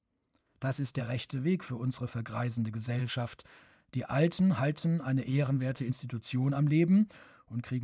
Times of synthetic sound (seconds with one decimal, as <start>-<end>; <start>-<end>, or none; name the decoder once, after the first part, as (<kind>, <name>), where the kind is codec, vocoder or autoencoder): 0.4-1.0 (autoencoder, DAC-VAE); 3.0-3.6; 5.3-5.9